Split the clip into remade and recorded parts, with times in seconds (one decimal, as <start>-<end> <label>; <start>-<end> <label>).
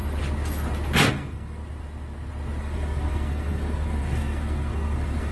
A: 0.0-1.1 recorded; 1.1-1.6 remade; 1.6-2.6 recorded; 2.6-5.3 remade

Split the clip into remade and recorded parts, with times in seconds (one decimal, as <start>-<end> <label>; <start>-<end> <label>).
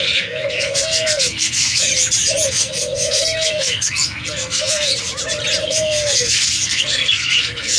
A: 0.0-1.9 remade; 1.9-2.5 recorded; 2.5-4.9 remade; 4.9-5.6 recorded; 5.6-7.8 remade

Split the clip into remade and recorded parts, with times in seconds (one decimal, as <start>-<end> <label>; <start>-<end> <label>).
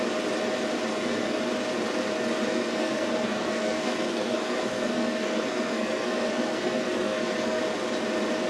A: 0.0-0.9 recorded; 0.9-1.4 remade; 1.4-2.5 recorded; 2.5-7.6 remade; 7.6-8.5 recorded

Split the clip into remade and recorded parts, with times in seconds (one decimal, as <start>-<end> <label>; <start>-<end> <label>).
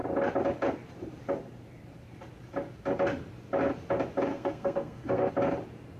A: 0.0-4.3 recorded; 4.3-5.3 remade; 5.3-6.0 recorded